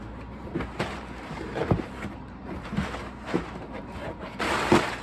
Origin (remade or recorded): remade